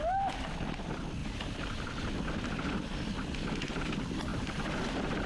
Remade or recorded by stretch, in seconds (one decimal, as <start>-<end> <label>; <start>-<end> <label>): 0.0-1.2 recorded; 1.2-1.9 remade; 1.9-4.3 recorded; 4.3-5.3 remade